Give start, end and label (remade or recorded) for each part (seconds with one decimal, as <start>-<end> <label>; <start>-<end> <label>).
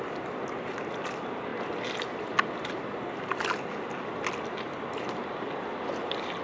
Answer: 0.0-6.4 recorded